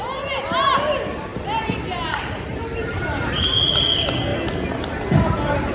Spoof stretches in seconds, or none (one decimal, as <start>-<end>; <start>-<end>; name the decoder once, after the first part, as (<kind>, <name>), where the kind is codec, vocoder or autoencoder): 1.3-3.3 (vocoder, BigVGAN v2)